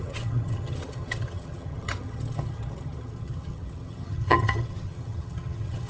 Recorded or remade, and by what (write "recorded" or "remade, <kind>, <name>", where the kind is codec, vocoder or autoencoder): remade, vocoder, HiFi-GAN